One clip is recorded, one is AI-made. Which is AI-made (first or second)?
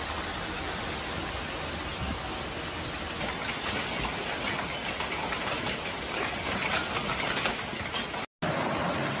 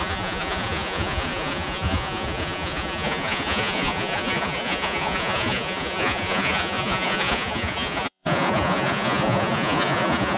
second